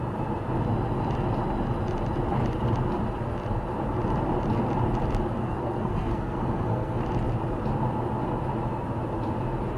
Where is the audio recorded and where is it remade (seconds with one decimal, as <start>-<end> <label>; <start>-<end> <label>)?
0.0-5.4 recorded; 5.4-7.0 remade; 7.0-9.8 recorded